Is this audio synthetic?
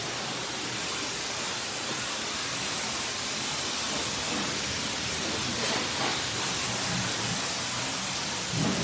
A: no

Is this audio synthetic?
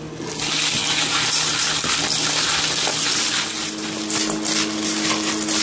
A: no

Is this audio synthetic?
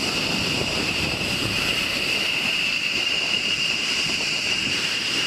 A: yes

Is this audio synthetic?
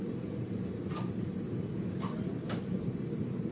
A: no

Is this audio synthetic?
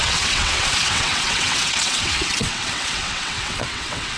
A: yes